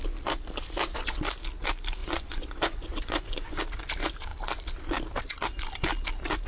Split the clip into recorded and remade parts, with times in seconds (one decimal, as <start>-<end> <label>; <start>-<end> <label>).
0.0-2.0 recorded; 2.0-3.6 remade; 3.6-6.5 recorded